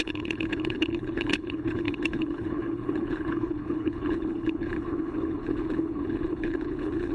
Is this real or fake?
fake